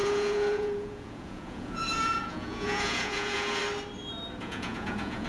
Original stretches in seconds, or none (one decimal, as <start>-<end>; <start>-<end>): 3.6-4.4